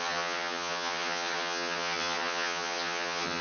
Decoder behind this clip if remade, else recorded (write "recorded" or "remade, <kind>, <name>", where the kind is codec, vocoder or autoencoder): remade, vocoder, HiFi-GAN